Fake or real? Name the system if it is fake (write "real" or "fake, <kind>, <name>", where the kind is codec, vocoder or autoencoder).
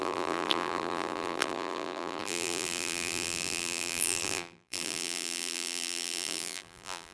fake, vocoder, BigVGAN v2